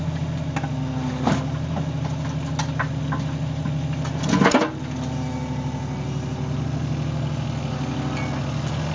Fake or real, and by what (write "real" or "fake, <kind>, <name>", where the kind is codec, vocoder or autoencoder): real